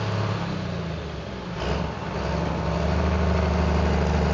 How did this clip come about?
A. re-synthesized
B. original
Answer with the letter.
B